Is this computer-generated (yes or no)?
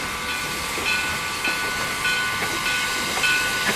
no